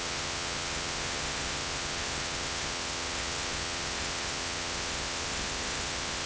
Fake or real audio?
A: fake